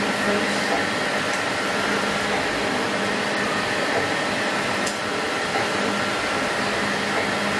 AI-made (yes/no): no